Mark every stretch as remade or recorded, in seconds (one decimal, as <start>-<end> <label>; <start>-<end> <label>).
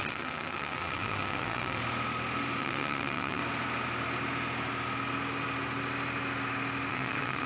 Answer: 0.0-1.8 remade; 1.8-2.6 recorded; 2.6-3.4 remade; 3.4-6.9 recorded; 6.9-7.5 remade